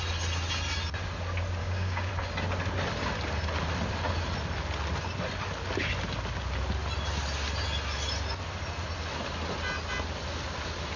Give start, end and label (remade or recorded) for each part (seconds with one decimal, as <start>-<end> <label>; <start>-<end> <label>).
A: 0.0-1.6 recorded; 1.6-2.1 remade; 2.1-11.0 recorded